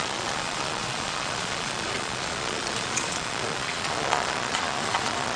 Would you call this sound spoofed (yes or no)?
yes